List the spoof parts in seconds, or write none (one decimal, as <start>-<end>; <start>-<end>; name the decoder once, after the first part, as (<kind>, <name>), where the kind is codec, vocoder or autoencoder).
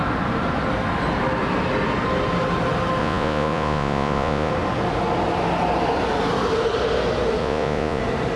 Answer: 3.0-4.5 (vocoder, Vocos); 7.4-8.0